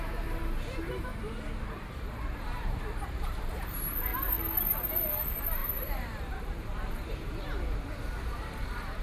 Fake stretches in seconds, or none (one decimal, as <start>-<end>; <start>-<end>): 0.0-1.1; 1.7-4.1; 4.9-9.0